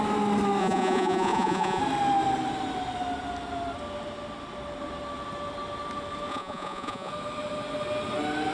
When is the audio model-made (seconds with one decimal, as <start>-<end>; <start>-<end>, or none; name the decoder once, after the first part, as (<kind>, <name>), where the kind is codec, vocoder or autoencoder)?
0.6-1.8 (vocoder, Vocos); 6.3-7.1

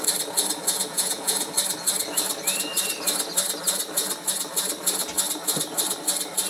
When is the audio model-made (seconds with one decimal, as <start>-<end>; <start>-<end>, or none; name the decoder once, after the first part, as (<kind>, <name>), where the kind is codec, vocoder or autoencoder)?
0.8-1.5 (vocoder, Vocos)

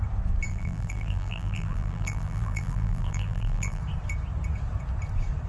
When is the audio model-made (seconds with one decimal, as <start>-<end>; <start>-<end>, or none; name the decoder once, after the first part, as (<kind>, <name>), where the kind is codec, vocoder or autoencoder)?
0.5-3.8 (vocoder, BigVGAN v2)

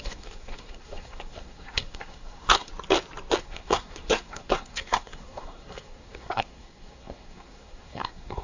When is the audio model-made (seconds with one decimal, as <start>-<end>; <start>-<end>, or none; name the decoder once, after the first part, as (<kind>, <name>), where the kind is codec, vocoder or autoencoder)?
0.0-2.7 (codec, SNAC); 3.4-8.4

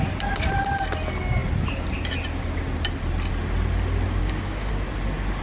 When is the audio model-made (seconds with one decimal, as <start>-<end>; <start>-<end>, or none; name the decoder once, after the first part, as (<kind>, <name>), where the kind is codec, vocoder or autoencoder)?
4.2-4.7 (codec, DAC)

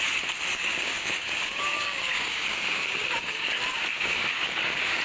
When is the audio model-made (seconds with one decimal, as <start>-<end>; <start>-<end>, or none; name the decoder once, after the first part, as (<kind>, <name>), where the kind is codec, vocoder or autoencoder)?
0.5-3.5 (codec, DAC); 3.9-5.0

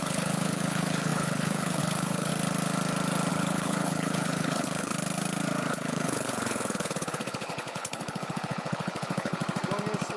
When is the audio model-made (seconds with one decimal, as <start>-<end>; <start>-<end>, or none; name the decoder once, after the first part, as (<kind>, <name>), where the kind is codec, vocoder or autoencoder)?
0.0-2.3 (codec, HILCodec); 3.3-4.9; 5.7-9.4